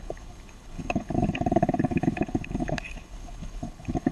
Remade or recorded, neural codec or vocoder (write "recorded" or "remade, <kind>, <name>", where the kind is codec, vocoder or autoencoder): remade, codec, HILCodec